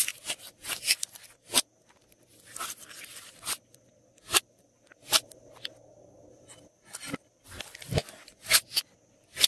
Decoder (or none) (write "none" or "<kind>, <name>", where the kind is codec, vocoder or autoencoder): none